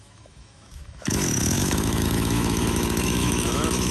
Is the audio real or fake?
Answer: fake